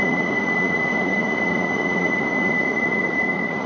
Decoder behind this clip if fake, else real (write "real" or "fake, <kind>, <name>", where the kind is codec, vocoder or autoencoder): fake, vocoder, Vocos